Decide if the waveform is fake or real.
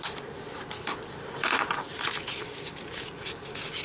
real